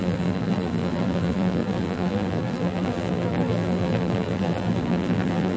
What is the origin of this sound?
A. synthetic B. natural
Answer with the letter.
A